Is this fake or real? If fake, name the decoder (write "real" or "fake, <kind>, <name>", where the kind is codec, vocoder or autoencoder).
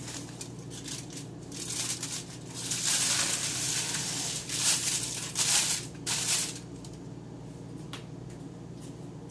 real